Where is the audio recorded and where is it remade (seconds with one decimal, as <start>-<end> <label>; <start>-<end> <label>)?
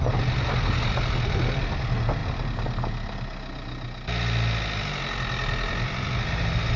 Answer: 0.0-6.8 recorded